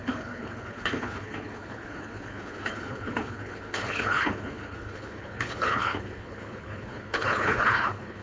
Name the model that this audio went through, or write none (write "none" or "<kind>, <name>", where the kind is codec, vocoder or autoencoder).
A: codec, HILCodec